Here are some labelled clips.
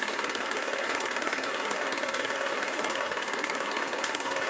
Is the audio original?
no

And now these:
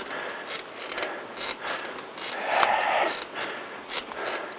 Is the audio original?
yes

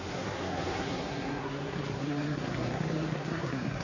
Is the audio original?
no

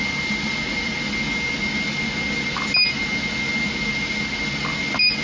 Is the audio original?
yes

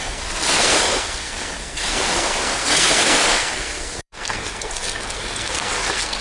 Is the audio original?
no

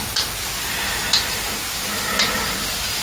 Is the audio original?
yes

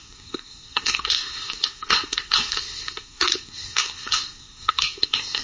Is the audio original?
no